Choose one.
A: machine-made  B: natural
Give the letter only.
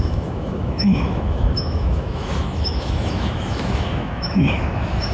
A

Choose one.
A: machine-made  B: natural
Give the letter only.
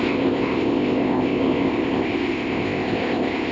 A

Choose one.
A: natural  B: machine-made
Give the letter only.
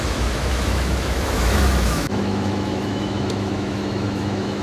B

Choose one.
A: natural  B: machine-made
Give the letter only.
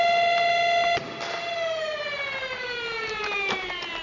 A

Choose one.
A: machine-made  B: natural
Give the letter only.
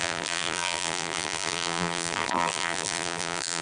A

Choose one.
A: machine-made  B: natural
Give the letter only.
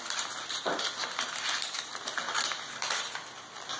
B